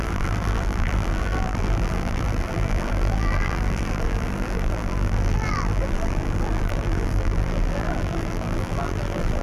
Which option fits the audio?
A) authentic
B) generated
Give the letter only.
B